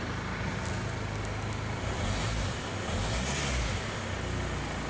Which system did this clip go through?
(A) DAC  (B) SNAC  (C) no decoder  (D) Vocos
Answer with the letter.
C